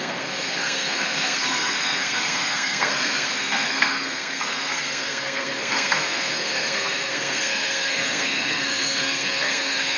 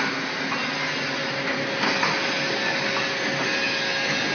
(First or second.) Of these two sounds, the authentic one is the second